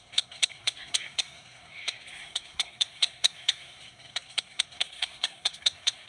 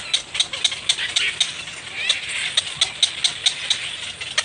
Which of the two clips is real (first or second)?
second